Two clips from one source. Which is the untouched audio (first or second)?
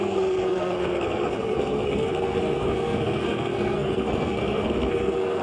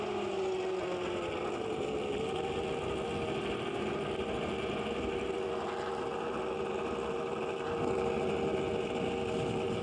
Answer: second